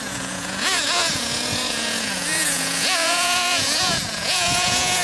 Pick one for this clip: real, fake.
fake